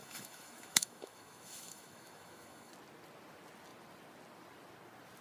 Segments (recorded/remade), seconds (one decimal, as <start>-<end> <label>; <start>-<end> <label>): 0.0-2.7 remade; 2.7-5.2 recorded